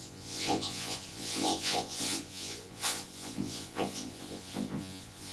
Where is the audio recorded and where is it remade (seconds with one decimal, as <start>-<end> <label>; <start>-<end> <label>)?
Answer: 0.0-5.3 remade

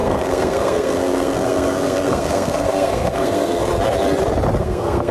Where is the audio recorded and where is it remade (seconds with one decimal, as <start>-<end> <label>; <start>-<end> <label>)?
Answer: 0.0-3.7 remade; 3.7-4.6 recorded; 4.6-5.1 remade

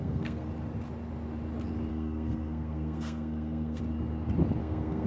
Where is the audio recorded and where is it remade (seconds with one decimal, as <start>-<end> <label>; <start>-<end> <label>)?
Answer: 0.0-0.5 remade; 0.5-1.9 recorded; 1.9-3.8 remade; 3.8-4.6 recorded; 4.6-5.1 remade